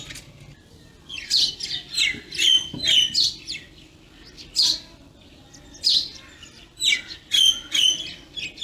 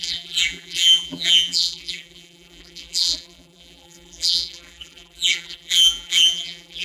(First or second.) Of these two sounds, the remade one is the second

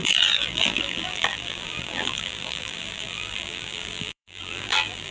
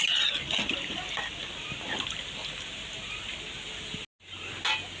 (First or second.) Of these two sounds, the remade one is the first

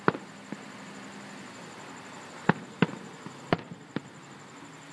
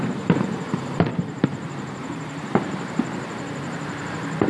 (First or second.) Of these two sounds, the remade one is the second